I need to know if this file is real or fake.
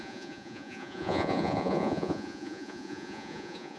fake